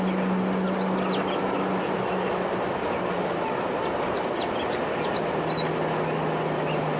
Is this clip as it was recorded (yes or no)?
yes